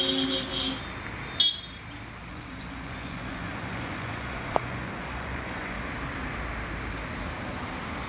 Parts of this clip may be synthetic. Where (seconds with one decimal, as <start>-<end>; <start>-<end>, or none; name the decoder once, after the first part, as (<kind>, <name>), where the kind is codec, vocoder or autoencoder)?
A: 2.3-5.8 (vocoder, Vocos)